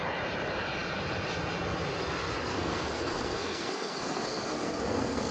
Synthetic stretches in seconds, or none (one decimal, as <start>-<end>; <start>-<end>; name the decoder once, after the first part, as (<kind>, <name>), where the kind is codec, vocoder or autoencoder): 2.5-5.3 (codec, SNAC)